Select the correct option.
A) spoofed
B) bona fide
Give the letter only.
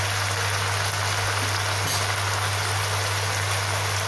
B